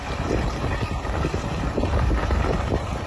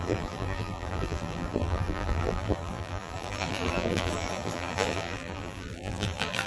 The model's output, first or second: second